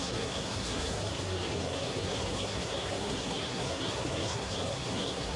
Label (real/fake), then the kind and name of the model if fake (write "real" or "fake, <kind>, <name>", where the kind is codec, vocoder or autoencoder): fake, codec, SNAC